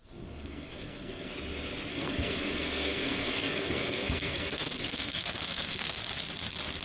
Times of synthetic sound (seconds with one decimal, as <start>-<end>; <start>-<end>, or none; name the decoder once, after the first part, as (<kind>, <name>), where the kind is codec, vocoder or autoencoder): 0.0-1.3 (codec, SNAC); 1.9-6.0